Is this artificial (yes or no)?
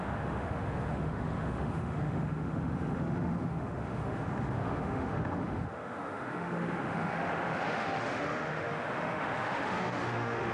yes